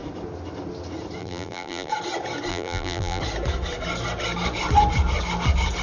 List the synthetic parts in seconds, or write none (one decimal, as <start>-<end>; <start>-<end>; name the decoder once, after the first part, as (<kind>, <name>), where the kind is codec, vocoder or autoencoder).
1.2-1.9 (vocoder, BigVGAN v2); 2.5-3.2